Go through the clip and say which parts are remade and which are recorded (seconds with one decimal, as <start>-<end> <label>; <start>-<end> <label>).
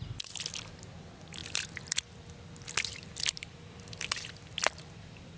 0.0-5.4 recorded